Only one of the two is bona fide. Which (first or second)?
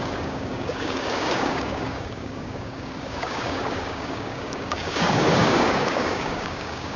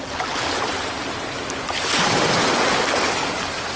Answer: second